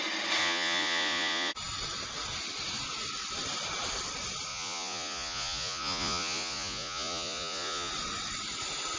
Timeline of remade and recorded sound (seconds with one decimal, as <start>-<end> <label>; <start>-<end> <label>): 0.0-0.4 recorded; 0.4-1.5 remade; 1.5-4.5 recorded; 4.5-7.9 remade; 7.9-9.0 recorded